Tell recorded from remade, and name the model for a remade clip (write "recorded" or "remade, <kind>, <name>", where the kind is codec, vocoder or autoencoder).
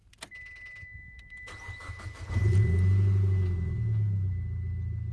recorded